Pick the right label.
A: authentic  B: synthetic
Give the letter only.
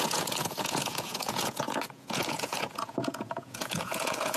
B